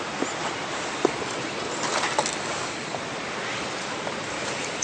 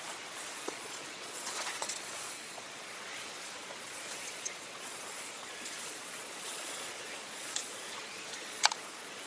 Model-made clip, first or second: second